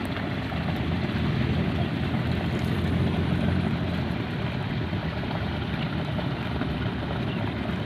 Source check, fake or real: fake